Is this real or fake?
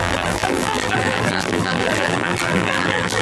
fake